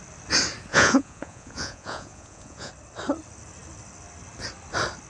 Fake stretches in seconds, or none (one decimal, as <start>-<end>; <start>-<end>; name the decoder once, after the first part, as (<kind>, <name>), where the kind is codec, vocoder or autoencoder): 0.7-2.7 (vocoder, Vocos)